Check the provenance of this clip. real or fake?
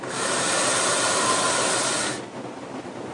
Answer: real